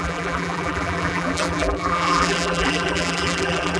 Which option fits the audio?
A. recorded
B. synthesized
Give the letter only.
B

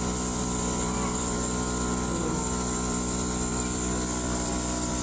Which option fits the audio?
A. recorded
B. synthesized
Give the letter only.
B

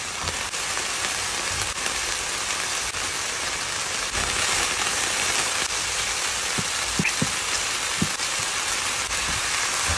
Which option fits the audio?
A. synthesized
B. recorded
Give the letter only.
A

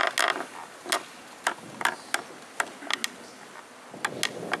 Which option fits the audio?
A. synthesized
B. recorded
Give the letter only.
B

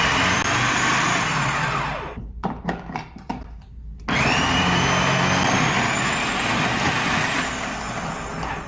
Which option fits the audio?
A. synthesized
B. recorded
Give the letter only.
B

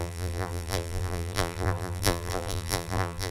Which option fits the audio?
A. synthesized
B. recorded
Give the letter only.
A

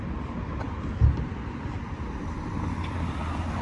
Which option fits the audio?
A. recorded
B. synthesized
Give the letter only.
A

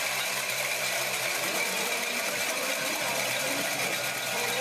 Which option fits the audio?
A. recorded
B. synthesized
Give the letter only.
B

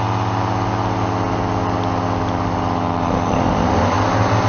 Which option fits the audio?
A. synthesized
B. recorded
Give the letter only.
B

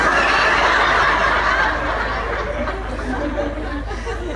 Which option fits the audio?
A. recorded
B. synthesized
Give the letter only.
A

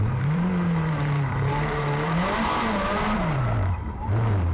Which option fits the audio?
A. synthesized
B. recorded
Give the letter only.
A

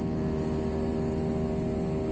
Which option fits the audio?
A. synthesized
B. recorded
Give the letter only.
B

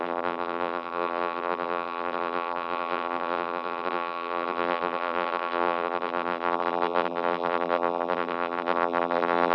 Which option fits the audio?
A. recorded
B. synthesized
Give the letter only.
B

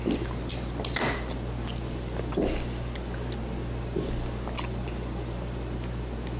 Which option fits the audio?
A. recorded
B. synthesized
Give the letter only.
A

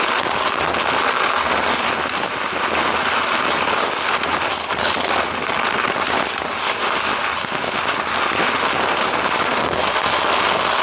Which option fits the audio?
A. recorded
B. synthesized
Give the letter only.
A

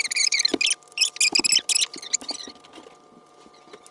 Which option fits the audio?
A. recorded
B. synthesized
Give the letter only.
A